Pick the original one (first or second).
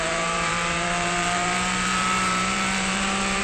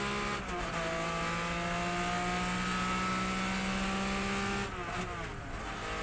second